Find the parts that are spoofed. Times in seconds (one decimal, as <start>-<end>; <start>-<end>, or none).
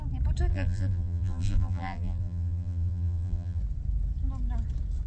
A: 0.5-3.6